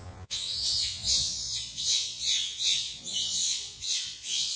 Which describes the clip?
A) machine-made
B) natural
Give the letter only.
A